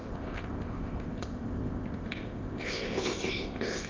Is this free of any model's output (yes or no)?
no